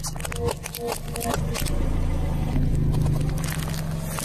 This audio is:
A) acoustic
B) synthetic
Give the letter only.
A